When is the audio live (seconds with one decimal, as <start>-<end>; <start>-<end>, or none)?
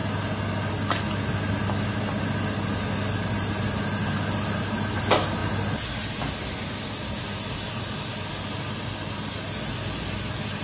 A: 0.0-10.6